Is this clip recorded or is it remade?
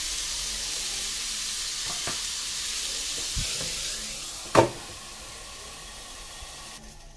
recorded